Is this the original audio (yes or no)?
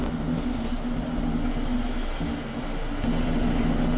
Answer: yes